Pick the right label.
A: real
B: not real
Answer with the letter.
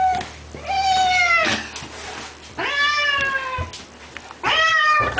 A